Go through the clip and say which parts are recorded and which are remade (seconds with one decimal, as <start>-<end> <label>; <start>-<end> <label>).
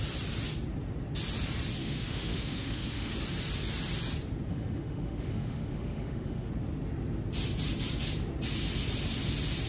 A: 0.0-1.8 recorded; 1.8-3.1 remade; 3.1-4.5 recorded; 4.5-6.5 remade; 6.5-9.7 recorded